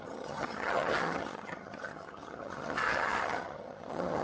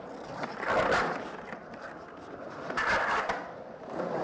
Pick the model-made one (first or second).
first